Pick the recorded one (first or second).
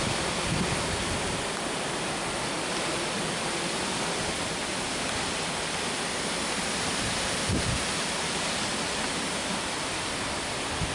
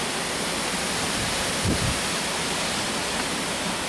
second